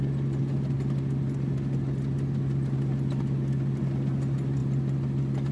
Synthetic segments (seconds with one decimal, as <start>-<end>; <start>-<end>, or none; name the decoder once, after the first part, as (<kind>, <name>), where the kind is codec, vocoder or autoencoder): none